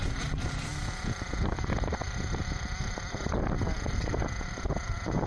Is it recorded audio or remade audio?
recorded